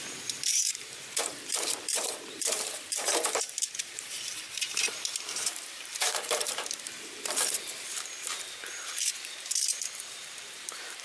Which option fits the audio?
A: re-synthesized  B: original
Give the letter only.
A